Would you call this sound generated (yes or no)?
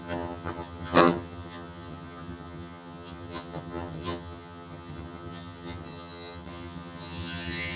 yes